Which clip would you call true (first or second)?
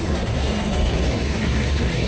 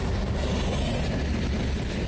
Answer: second